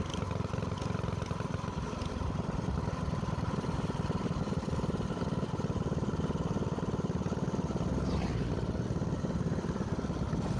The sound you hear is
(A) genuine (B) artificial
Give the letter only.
A